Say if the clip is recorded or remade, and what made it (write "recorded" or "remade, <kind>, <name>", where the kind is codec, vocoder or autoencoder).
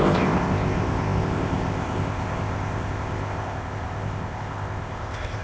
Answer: remade, codec, ZipCodec